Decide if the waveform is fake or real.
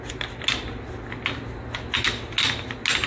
real